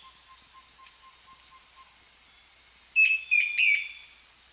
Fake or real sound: real